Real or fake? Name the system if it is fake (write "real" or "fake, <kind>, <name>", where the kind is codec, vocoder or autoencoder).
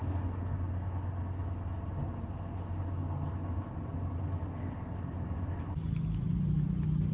real